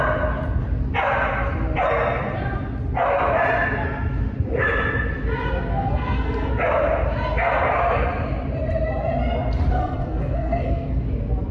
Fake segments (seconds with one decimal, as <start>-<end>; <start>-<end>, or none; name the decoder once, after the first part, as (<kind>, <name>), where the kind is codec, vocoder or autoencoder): 5.7-6.5 (codec, SNAC); 9.8-11.0